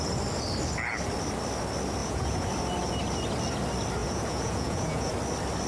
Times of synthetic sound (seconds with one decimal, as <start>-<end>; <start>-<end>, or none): 2.0-2.5; 4.0-5.1